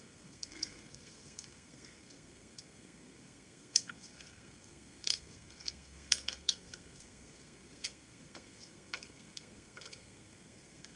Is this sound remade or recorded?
remade